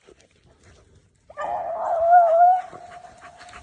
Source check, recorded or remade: recorded